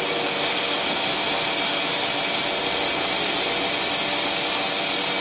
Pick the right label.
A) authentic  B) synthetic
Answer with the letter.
A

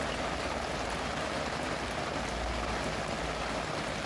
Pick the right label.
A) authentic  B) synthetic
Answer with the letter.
A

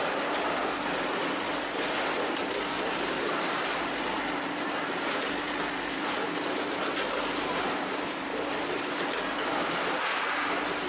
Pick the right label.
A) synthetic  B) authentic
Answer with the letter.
B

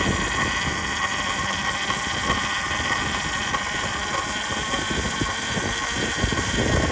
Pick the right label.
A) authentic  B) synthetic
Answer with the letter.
A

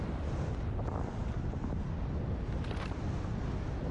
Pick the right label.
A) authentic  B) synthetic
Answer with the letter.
A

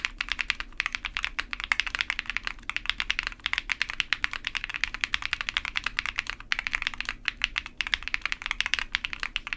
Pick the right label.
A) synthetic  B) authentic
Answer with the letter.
B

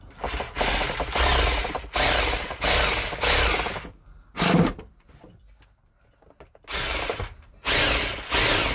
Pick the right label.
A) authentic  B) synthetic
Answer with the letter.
A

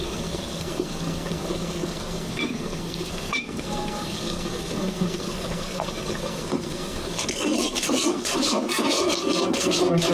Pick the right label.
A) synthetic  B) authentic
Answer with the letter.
A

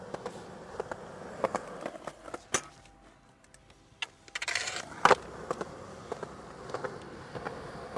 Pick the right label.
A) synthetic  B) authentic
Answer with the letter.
B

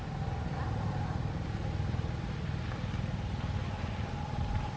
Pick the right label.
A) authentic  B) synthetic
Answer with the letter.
A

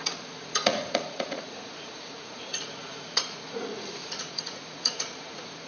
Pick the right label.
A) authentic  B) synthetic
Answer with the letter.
B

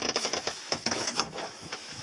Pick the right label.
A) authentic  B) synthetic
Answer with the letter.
B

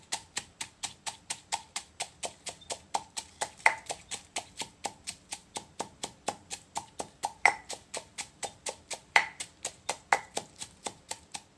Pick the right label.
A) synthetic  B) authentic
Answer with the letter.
A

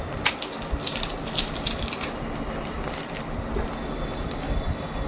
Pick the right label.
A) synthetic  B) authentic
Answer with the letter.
B